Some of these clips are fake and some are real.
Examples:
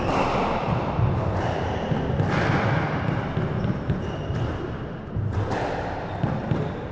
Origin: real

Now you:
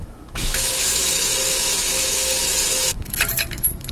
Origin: fake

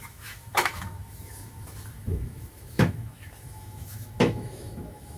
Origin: fake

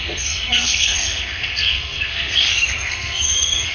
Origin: fake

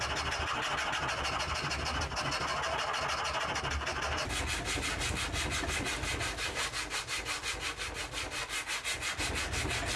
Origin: real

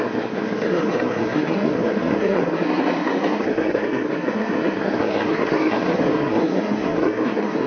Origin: fake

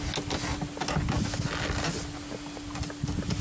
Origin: real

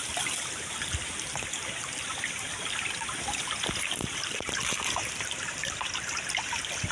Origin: fake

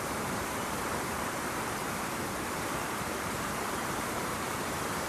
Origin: fake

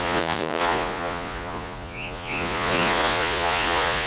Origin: fake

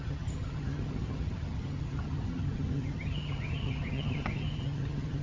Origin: fake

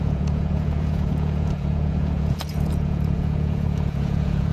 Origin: fake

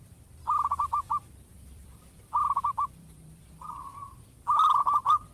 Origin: fake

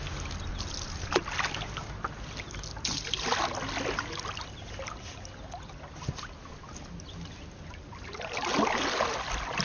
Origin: real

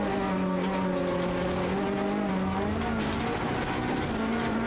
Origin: real